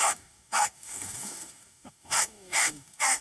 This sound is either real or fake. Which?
fake